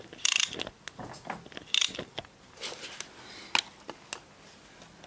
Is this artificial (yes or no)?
no